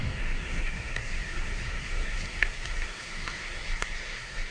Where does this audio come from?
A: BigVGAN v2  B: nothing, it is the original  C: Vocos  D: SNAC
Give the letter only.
D